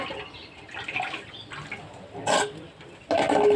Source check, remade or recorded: recorded